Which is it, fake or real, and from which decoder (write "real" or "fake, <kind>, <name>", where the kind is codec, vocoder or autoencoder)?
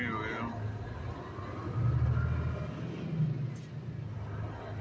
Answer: real